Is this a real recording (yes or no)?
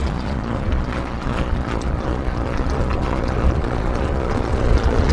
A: no